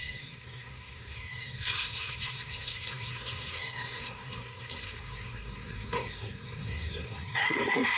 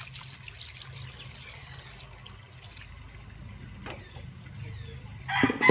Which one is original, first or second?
second